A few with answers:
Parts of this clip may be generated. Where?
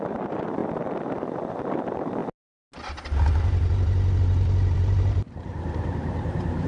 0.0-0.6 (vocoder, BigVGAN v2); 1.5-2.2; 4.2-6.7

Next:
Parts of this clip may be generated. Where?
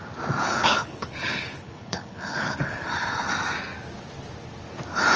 0.4-3.3 (codec, HILCodec)